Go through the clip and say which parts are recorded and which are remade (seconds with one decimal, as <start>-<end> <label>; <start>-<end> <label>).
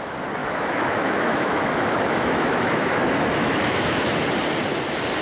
0.0-0.4 recorded; 0.4-3.0 remade; 3.0-3.4 recorded; 3.4-4.2 remade; 4.2-5.2 recorded